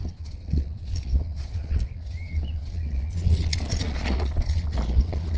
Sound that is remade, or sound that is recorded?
remade